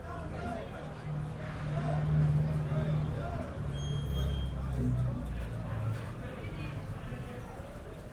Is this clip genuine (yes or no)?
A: yes